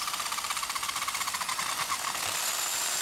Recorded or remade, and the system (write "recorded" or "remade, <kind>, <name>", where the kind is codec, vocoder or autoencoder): recorded